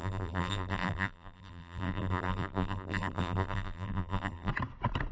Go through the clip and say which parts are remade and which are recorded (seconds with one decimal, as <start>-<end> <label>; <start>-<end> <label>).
0.0-4.5 remade; 4.5-5.1 recorded